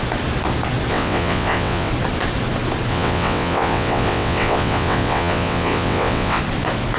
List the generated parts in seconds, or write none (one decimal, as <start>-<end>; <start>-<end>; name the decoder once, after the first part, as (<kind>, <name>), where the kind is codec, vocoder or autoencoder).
0.9-1.9 (vocoder, WaveNeXt); 2.9-6.4